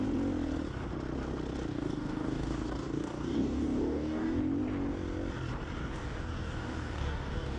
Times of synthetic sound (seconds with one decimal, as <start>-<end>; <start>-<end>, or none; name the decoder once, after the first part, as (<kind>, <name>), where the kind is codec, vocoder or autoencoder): 1.7-4.4 (codec, DAC); 5.8-7.6